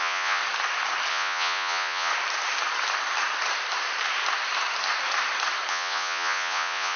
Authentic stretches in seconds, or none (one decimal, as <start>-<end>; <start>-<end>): 0.4-1.1; 2.1-5.7